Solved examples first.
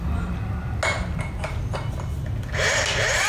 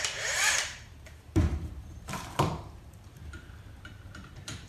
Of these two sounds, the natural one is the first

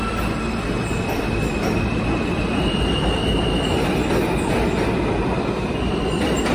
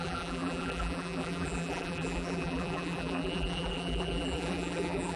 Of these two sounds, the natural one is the first